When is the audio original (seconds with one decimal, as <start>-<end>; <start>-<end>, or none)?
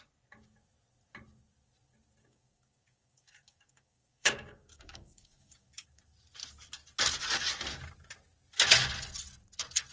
0.0-2.2; 6.0-9.9